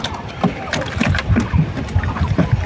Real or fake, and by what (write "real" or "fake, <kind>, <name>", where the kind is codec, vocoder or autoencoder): real